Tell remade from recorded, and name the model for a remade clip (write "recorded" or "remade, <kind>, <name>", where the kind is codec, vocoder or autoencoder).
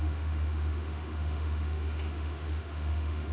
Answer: remade, autoencoder, DAC-VAE